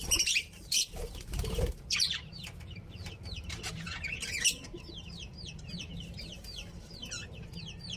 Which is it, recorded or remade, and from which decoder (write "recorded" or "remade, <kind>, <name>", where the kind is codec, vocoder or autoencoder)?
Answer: remade, vocoder, BigVGAN v2